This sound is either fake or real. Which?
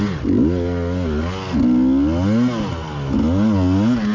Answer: real